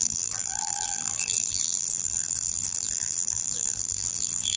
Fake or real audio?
fake